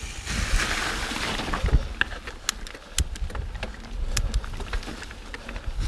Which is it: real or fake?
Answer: real